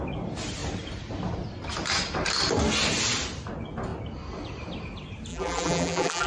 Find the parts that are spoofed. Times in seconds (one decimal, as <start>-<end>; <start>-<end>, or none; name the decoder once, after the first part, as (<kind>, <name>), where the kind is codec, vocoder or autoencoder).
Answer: 5.3-6.3 (vocoder, BigVGAN v2)